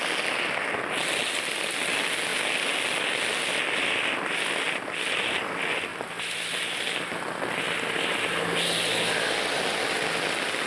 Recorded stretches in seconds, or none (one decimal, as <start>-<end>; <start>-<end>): 0.0-10.7